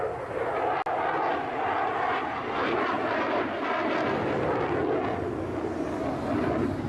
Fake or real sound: real